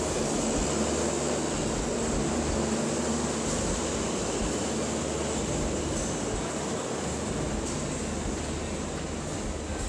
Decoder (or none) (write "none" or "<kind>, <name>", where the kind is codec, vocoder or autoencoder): none